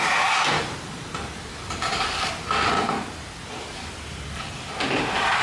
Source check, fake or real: real